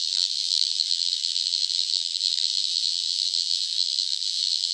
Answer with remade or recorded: remade